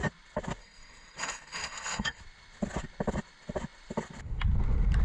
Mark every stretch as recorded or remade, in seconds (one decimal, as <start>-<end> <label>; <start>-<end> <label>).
0.0-0.6 recorded; 0.6-2.2 remade; 2.2-5.0 recorded